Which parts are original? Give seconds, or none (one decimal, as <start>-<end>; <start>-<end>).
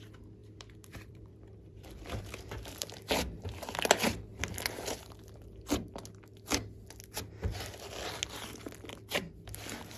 0.0-0.4; 3.4-9.2